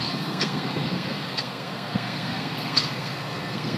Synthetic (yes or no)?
yes